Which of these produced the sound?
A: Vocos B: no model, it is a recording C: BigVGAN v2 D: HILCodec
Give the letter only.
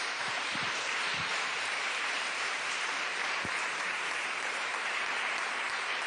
C